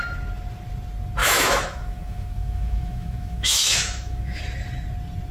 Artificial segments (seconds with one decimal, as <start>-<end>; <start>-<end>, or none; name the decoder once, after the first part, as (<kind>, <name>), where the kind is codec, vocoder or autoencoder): 1.2-4.4 (autoencoder, DAC-VAE)